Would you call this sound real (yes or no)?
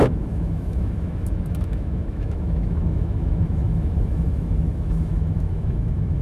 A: no